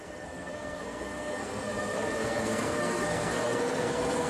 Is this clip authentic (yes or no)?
no